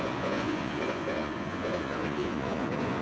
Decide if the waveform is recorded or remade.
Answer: remade